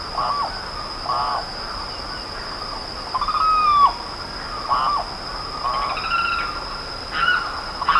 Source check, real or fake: real